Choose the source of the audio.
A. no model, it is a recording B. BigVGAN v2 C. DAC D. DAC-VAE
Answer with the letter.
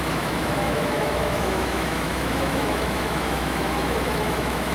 D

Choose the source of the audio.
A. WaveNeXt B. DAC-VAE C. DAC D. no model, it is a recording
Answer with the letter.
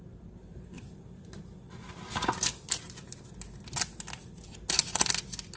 D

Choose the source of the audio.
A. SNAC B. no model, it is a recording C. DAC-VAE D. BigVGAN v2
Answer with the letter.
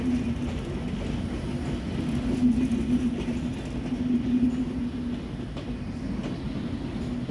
B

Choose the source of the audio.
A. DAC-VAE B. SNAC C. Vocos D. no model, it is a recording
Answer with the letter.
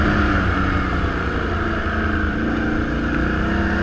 D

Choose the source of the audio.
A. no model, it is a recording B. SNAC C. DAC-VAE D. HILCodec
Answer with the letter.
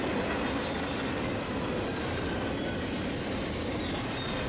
A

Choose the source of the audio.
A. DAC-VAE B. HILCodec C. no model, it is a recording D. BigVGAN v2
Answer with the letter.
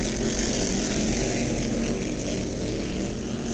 C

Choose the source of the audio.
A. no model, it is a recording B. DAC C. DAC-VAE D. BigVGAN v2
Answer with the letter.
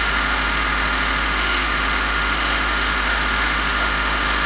C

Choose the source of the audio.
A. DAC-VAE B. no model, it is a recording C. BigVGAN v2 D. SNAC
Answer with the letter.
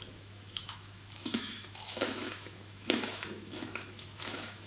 A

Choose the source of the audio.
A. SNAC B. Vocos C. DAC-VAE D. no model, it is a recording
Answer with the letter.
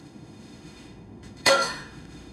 C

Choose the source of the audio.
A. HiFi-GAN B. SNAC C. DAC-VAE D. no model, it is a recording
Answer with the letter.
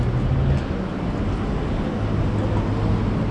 D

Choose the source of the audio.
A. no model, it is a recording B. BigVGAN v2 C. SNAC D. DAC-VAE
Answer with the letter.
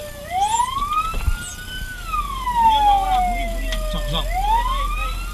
A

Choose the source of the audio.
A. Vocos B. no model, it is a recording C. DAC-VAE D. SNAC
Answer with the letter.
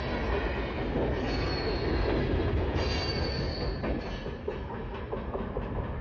B